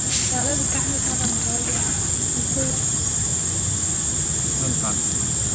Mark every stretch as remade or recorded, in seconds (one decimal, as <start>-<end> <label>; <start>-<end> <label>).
0.0-3.3 recorded; 3.3-4.1 remade; 4.1-5.5 recorded